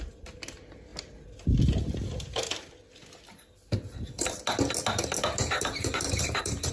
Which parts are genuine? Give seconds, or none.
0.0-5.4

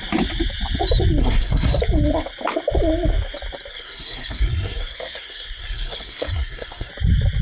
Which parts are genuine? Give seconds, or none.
0.0-1.2; 1.8-3.7; 6.9-7.4

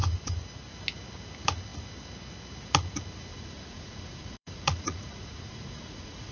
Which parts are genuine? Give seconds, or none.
0.0-3.3